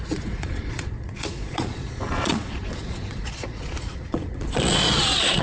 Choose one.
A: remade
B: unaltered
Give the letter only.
A